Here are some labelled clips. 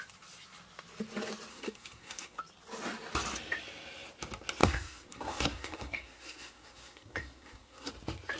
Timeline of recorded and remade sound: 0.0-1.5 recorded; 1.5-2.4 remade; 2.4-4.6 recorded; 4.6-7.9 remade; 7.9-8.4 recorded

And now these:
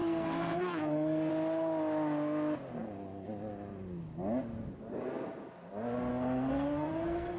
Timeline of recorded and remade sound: 0.0-1.3 remade; 1.3-6.1 recorded; 6.1-7.4 remade